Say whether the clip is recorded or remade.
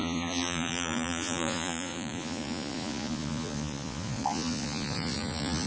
remade